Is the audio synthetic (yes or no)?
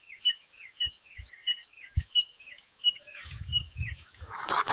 yes